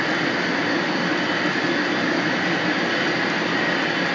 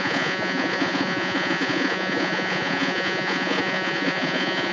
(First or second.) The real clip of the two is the first